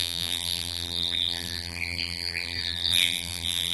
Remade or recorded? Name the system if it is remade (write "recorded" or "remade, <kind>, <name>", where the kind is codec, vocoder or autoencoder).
remade, vocoder, BigVGAN v2